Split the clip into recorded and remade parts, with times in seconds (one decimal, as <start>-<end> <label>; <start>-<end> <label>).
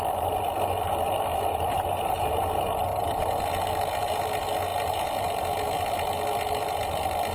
0.0-1.3 recorded; 1.3-2.3 remade; 2.3-4.7 recorded; 4.7-5.2 remade; 5.2-7.3 recorded